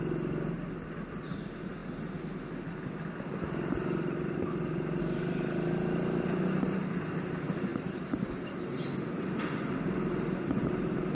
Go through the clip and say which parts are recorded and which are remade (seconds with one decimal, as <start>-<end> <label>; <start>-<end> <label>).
0.0-11.1 recorded